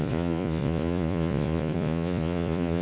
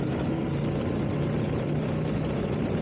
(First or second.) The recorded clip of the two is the second